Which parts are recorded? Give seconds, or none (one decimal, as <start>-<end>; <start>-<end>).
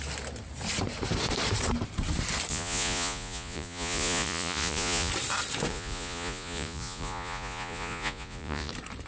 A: 0.0-2.5; 5.1-5.7; 8.7-9.1